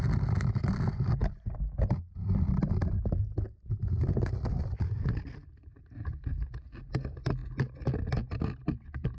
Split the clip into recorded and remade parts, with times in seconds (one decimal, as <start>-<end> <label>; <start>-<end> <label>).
0.0-9.2 recorded